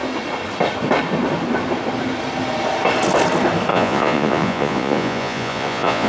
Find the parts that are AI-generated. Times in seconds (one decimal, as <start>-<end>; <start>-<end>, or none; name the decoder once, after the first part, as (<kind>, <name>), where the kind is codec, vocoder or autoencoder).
3.7-6.1 (vocoder, Vocos)